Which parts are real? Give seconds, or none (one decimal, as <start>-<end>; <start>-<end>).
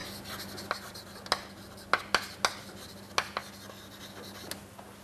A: 0.0-5.0